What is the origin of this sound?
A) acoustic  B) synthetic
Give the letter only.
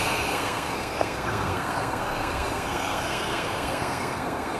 B